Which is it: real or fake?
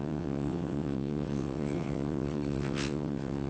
fake